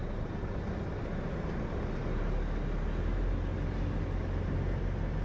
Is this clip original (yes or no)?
yes